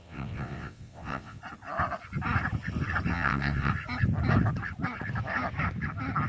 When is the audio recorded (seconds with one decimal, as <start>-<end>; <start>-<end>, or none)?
1.4-3.1; 3.7-6.3